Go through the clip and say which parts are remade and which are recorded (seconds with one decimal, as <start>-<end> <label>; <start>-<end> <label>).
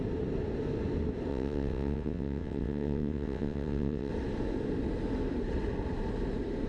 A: 0.0-1.3 recorded; 1.3-4.1 remade; 4.1-6.7 recorded